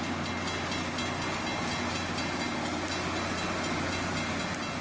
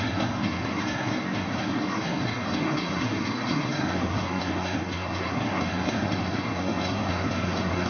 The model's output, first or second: second